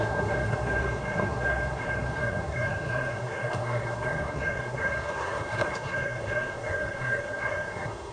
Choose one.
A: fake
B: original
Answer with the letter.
A